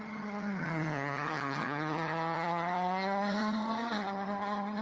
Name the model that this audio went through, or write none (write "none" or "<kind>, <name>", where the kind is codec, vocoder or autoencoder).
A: vocoder, HiFi-GAN